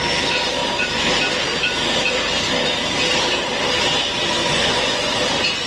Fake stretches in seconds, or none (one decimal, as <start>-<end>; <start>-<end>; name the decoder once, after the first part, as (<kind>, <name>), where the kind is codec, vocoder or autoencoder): 4.4-5.2 (vocoder, Vocos)